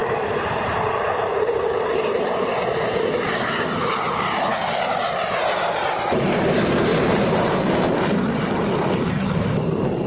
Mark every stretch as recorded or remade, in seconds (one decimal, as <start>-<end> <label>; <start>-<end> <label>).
0.0-10.1 remade